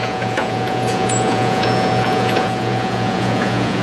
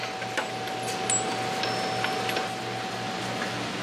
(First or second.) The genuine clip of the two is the second